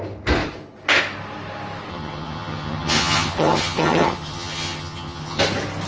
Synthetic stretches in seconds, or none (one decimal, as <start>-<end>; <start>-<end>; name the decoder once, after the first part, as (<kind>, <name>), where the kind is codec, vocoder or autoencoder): 1.9-5.4 (vocoder, HiFi-GAN)